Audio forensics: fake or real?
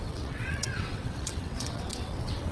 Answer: fake